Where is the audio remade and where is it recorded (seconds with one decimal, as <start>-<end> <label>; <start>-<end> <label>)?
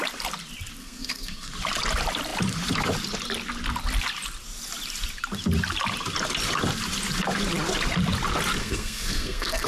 0.0-0.8 recorded; 0.8-1.5 remade; 1.5-8.6 recorded; 8.6-9.7 remade